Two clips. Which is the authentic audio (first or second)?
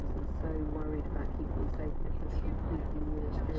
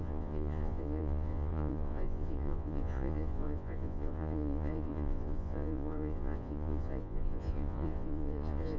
first